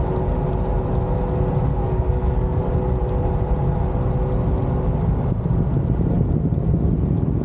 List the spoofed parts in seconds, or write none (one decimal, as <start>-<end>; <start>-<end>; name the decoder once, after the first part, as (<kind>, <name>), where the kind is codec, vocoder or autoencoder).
1.7-2.6 (codec, SNAC)